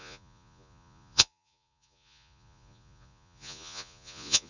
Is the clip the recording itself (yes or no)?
no